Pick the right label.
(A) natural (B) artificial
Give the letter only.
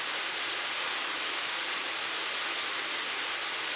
A